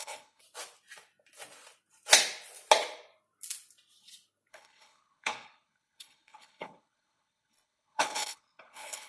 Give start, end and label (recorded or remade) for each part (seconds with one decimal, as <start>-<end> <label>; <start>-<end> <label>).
0.0-0.4 remade; 0.4-4.5 recorded; 4.5-9.1 remade